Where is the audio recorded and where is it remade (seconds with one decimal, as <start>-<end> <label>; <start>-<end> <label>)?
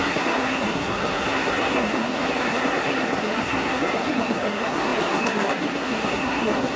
0.0-6.8 remade